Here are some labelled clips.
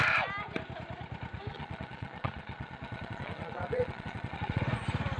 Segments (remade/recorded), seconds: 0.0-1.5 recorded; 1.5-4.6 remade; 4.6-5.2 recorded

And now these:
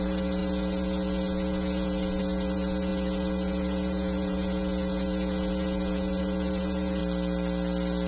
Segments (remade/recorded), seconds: 0.0-7.0 remade; 7.0-8.1 recorded

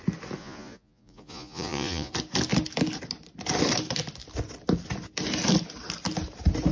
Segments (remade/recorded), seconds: 0.0-0.4 recorded; 0.4-2.1 remade; 2.1-6.7 recorded